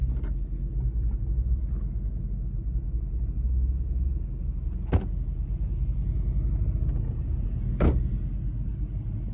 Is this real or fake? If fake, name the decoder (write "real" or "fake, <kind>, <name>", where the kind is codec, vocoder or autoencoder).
real